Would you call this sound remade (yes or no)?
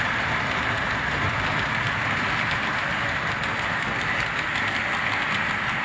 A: no